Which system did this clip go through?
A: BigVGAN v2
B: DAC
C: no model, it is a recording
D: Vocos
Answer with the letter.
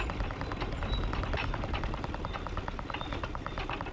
C